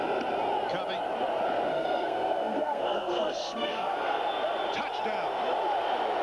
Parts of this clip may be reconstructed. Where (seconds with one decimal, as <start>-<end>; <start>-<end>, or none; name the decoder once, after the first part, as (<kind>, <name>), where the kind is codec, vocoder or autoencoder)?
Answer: 1.7-4.2 (codec, SNAC)